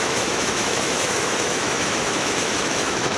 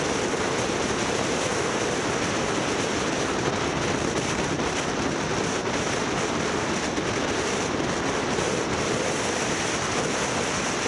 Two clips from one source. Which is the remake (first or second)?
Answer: first